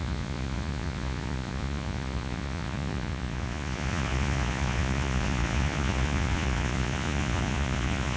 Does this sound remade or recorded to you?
remade